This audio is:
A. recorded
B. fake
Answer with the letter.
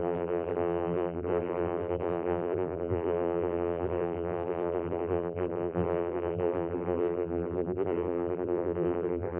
B